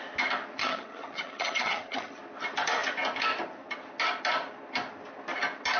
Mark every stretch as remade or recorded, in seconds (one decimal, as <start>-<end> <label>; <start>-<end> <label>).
0.0-0.6 recorded; 0.6-2.2 remade; 2.2-5.8 recorded